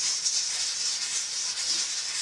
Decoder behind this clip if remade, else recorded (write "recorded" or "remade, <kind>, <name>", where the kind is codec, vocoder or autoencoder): recorded